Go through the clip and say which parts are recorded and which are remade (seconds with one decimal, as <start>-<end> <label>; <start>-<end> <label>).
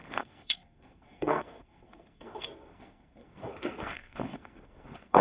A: 0.0-5.2 remade